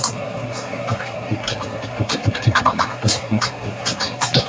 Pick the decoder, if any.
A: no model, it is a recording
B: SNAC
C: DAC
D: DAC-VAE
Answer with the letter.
B